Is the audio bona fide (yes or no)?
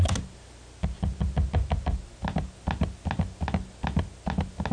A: yes